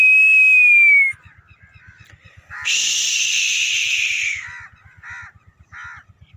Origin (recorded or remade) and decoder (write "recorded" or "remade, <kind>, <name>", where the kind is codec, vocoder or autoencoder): recorded